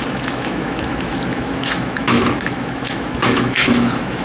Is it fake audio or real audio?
fake